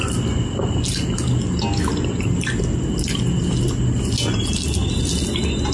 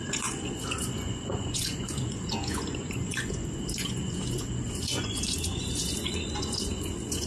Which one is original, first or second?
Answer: first